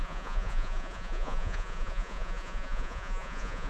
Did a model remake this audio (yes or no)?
yes